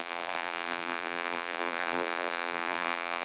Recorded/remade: remade